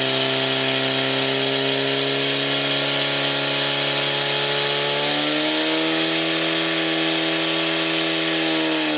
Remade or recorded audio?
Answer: recorded